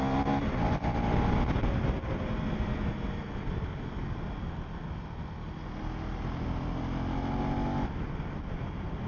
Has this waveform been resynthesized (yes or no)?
no